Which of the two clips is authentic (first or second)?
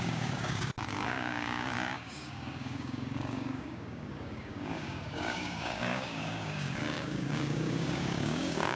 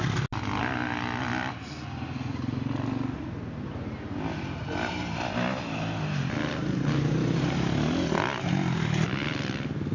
second